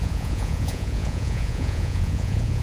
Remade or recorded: remade